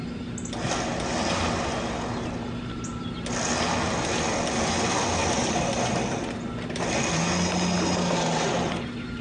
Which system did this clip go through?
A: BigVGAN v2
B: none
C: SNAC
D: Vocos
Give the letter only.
B